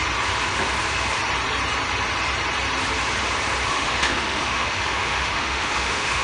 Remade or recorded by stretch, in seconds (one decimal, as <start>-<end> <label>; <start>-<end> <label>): 0.0-3.7 recorded; 3.7-6.2 remade